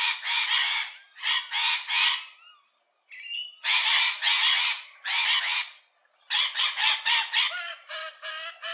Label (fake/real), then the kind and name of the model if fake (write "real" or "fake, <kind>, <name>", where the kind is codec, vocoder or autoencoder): real